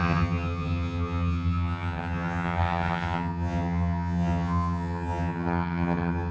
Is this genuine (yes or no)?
no